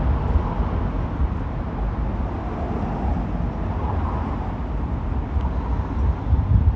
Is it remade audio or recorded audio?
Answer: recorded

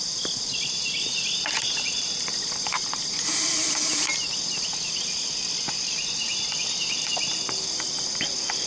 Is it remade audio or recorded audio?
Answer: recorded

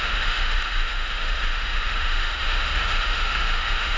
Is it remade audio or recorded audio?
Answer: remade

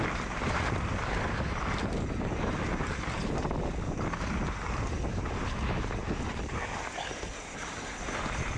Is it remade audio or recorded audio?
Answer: recorded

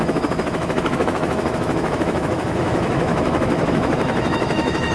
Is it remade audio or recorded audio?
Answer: remade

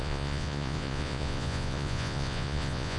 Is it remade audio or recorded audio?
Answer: remade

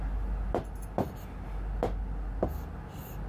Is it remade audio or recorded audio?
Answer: recorded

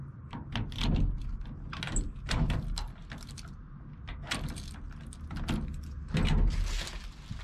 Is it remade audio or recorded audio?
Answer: recorded